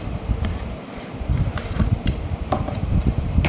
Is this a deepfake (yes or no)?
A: yes